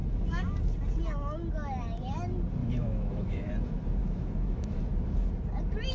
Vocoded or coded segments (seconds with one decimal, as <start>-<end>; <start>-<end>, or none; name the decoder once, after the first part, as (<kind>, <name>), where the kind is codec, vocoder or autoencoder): 2.6-3.5 (autoencoder, DAC-VAE); 4.0-4.8